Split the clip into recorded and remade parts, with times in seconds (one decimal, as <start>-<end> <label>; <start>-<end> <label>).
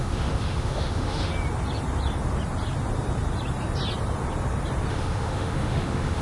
0.0-1.3 remade; 1.3-4.9 recorded; 4.9-6.2 remade